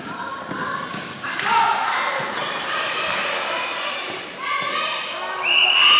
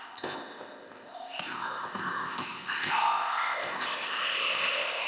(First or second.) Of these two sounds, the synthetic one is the second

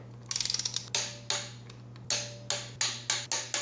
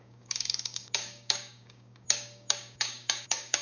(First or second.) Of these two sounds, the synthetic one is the second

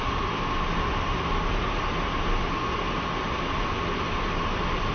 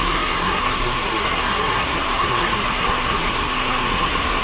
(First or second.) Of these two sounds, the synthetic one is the second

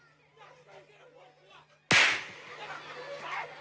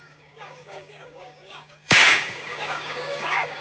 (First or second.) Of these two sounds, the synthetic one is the second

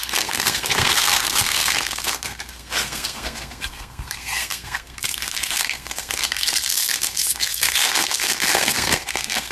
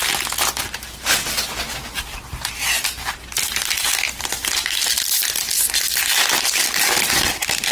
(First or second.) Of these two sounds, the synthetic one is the first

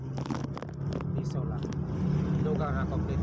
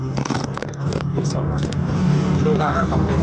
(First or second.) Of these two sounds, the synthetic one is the second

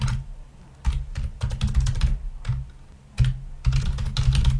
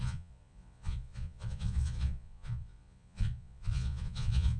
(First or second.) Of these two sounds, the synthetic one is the second